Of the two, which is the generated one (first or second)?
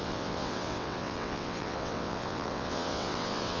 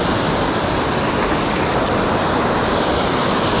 first